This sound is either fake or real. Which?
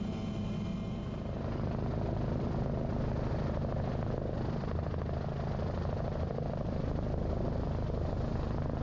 real